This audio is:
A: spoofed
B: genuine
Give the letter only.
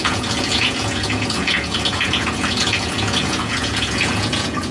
A